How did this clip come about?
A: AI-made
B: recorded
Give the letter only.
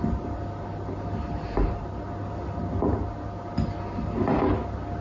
B